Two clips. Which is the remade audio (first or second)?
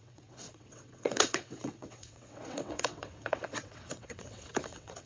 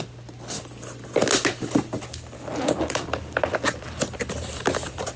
first